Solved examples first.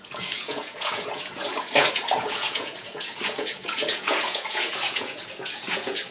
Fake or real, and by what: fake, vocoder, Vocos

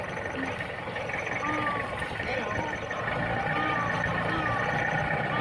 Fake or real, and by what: fake, vocoder, BigVGAN v2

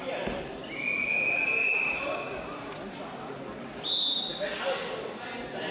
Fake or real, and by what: real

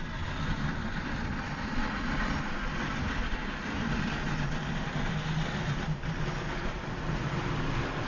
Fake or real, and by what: real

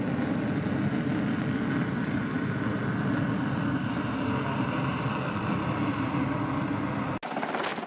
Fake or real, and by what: real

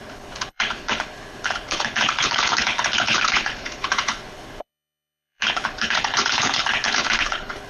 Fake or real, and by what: fake, codec, HILCodec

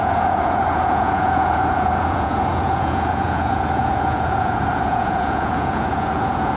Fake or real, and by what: fake, vocoder, Vocos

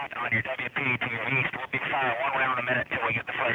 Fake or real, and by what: real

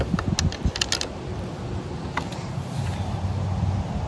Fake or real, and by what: real